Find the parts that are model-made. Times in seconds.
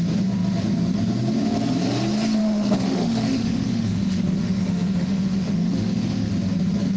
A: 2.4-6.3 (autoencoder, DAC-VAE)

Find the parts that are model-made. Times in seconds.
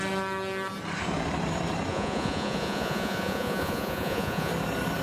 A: 1.9-4.5 (vocoder, Vocos)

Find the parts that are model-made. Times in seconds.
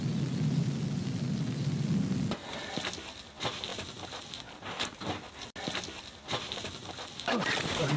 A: none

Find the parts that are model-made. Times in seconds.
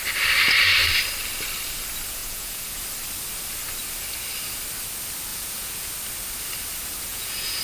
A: 2.2-2.8 (vocoder, Vocos); 5.3-5.9; 7.1-7.6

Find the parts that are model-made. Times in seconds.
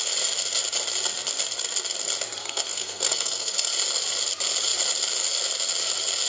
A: 2.4-3.7 (codec, SNAC)